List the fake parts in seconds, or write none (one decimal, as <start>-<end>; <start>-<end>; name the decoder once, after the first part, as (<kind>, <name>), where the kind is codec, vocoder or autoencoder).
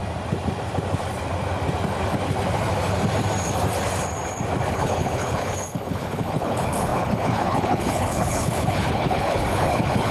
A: 4.7-10.1 (codec, HILCodec)